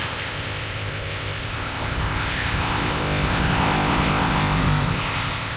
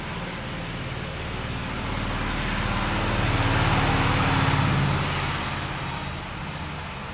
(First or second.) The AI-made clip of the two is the first